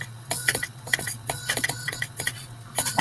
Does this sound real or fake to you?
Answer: fake